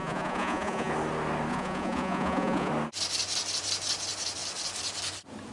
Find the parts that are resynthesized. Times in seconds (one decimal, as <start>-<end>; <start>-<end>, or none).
0.0-0.9; 1.5-2.7